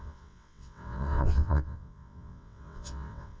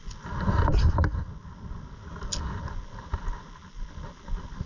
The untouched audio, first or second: second